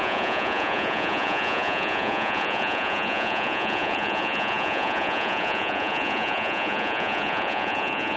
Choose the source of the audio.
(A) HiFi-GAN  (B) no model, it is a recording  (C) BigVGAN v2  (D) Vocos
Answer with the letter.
D